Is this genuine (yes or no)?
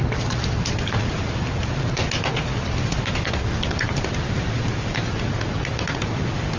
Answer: yes